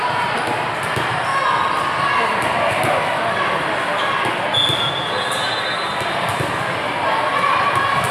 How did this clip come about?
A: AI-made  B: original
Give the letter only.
B